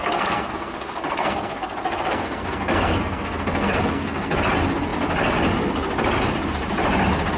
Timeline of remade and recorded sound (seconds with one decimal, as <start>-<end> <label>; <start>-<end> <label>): 0.0-4.4 remade; 4.4-7.4 recorded